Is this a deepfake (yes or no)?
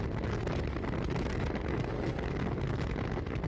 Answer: no